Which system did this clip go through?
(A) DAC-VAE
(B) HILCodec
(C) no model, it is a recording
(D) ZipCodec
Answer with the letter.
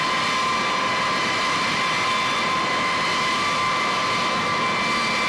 C